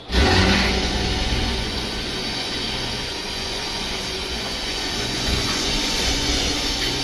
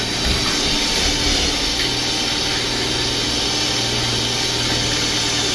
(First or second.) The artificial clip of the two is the first